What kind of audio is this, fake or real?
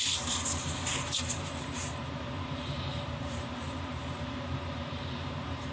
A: fake